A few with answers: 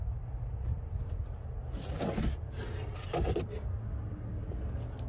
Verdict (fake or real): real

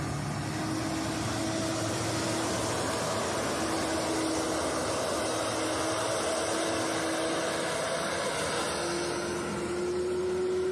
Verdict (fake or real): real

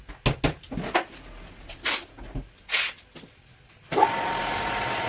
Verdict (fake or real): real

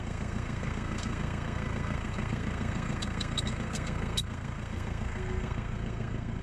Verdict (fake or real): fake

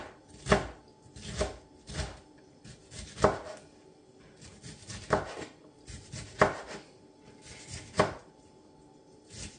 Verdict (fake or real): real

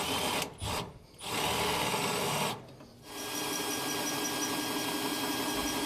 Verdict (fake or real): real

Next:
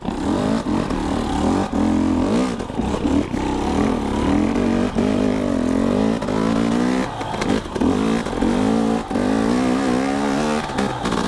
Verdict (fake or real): real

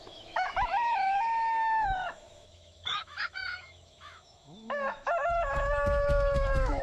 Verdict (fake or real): fake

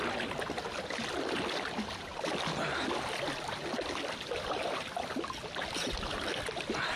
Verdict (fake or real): real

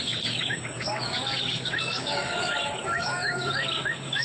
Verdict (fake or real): fake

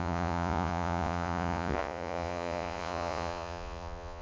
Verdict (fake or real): fake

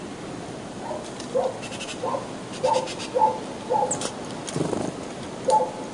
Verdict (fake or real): real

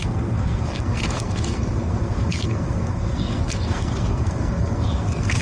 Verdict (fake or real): fake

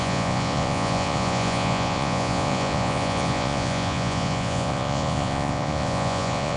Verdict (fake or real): fake